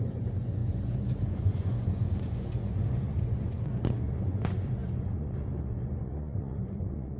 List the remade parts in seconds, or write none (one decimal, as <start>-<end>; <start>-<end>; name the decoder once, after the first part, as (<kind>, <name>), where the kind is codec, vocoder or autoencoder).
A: 0.0-7.2 (vocoder, Vocos)